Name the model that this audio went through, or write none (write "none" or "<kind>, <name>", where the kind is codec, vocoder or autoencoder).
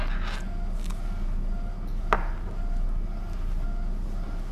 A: none